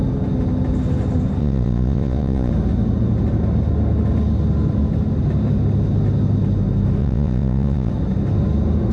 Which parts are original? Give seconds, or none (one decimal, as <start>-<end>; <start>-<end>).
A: 0.0-1.4; 2.5-7.0; 7.9-8.9